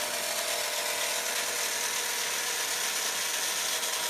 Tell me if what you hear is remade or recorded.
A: recorded